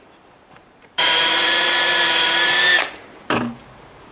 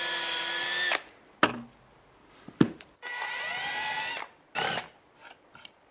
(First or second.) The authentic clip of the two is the second